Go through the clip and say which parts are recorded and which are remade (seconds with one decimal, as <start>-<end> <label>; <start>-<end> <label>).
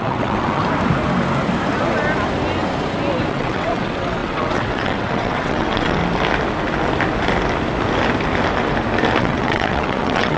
0.0-0.6 remade; 0.6-3.3 recorded; 3.3-6.0 remade; 6.0-9.2 recorded; 9.2-10.4 remade